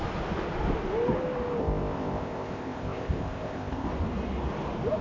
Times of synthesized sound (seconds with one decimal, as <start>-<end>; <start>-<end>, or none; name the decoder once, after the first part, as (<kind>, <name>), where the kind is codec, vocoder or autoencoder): 1.6-3.9 (codec, ZipCodec)